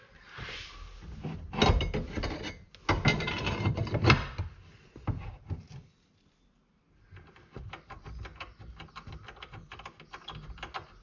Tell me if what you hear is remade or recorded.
recorded